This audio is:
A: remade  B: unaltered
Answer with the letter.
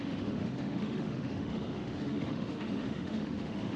A